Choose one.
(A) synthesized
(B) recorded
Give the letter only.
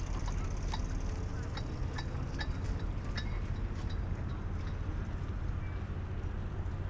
B